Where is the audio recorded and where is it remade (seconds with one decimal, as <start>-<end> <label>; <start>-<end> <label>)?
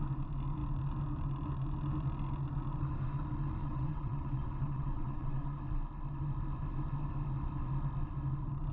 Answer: 0.0-3.6 recorded; 3.6-5.6 remade; 5.6-8.7 recorded